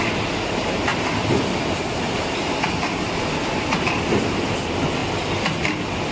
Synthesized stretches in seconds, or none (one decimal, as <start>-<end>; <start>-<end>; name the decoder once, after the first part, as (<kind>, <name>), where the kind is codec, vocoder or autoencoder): none